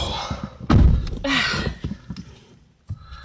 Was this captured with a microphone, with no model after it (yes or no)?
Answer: yes